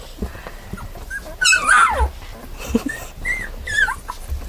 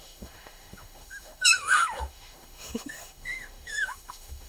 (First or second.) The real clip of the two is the first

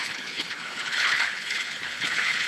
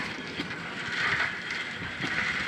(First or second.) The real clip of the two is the second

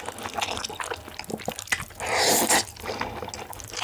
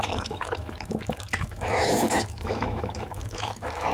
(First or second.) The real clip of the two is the first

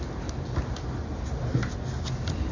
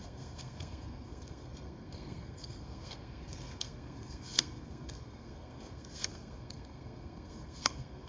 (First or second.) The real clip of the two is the first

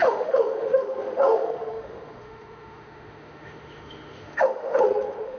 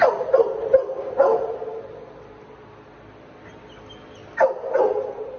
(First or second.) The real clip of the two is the second